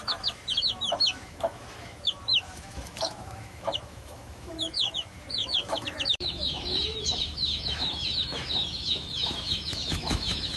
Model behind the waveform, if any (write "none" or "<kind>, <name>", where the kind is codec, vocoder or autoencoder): autoencoder, DAC-VAE